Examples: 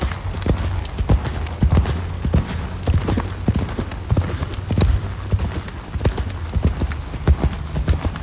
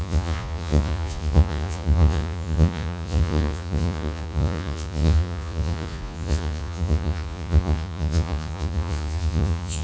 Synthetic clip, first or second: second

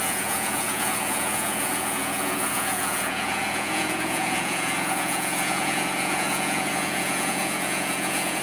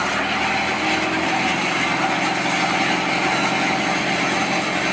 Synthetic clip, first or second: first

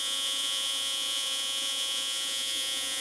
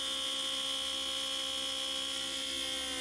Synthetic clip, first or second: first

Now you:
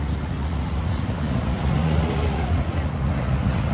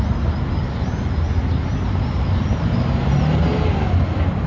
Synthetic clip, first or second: first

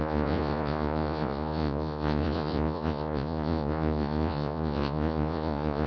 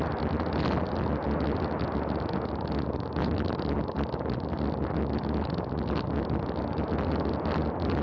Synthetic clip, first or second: first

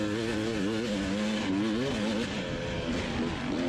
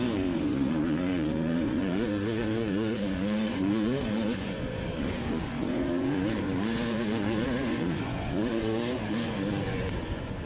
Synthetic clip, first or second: second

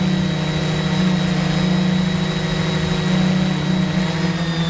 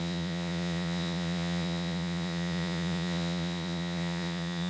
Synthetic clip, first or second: second